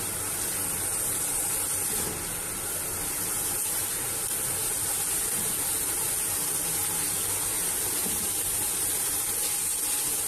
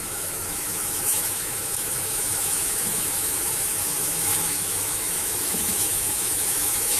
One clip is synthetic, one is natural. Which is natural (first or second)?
first